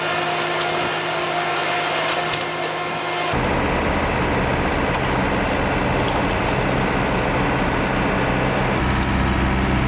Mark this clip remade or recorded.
recorded